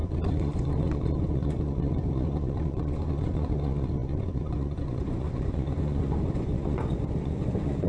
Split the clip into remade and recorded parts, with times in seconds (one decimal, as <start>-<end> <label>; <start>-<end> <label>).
0.0-7.9 remade